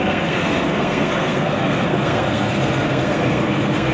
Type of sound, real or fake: fake